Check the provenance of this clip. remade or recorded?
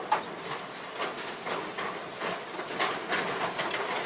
recorded